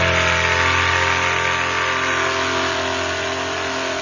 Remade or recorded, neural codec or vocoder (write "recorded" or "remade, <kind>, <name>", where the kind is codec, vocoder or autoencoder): recorded